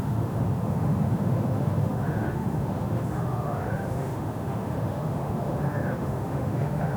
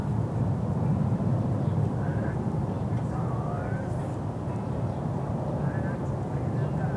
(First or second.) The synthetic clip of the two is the first